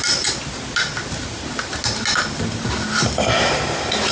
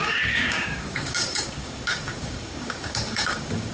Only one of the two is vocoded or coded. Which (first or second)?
second